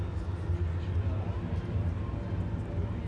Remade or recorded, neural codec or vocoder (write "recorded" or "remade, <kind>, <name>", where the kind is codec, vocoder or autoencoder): recorded